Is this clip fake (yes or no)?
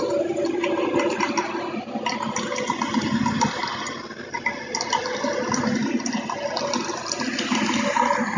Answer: no